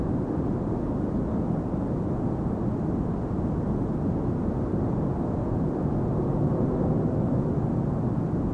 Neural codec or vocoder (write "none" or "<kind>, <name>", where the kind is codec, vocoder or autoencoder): none